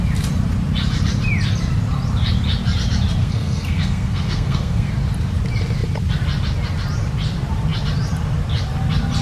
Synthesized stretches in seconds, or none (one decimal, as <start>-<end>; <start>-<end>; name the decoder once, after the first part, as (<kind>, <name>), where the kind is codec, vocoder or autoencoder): 3.2-4.9 (codec, SNAC)